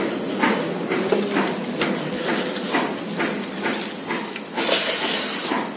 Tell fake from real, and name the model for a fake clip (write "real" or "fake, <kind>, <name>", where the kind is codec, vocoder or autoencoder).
real